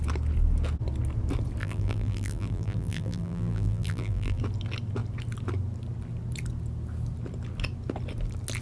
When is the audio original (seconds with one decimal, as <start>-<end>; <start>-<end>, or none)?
0.0-1.6; 4.4-8.6